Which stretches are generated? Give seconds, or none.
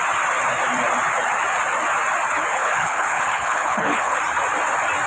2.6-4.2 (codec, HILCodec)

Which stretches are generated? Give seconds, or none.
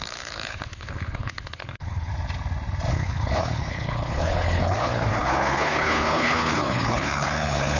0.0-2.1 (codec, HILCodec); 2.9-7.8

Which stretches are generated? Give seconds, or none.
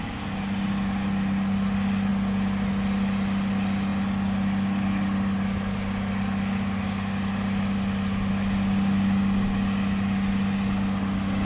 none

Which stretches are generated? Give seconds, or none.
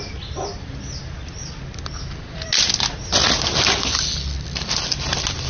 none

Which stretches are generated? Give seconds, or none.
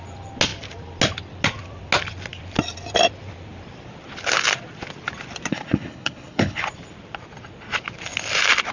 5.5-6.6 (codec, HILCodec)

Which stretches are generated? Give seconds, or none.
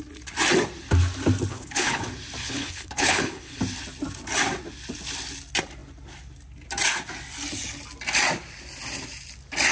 1.5-2.0 (codec, HILCodec); 2.4-3.6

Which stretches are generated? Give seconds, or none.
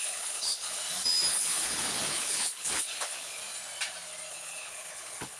0.0-0.8 (codec, HILCodec); 1.3-3.4; 4.3-5.4